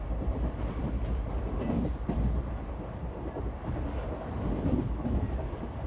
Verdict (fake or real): real